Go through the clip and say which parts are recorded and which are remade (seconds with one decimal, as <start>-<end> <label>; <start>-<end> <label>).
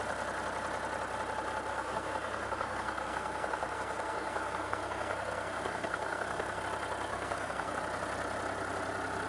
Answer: 0.0-1.7 recorded; 1.7-6.6 remade; 6.6-7.1 recorded; 7.1-7.8 remade; 7.8-9.3 recorded